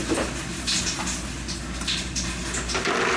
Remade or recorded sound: recorded